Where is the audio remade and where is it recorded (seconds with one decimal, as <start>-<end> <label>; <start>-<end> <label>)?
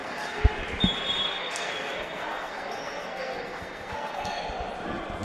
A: 0.0-0.5 remade; 0.5-1.3 recorded; 1.3-4.4 remade; 4.4-5.2 recorded